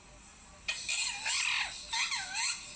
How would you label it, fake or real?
real